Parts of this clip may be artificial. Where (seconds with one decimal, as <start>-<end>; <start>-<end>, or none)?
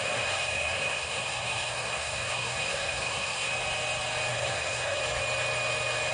0.0-3.5; 4.3-5.0